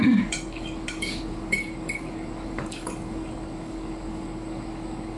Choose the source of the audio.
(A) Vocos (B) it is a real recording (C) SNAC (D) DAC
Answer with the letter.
D